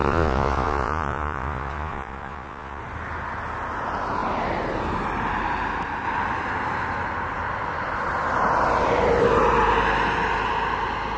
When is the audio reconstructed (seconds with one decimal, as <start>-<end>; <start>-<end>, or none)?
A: 0.0-2.8